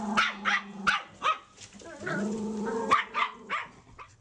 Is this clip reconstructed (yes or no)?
no